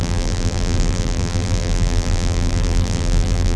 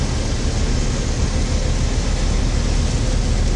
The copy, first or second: first